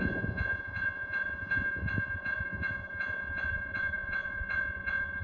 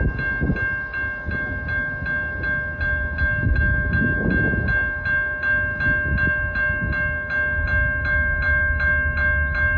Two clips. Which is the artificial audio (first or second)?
first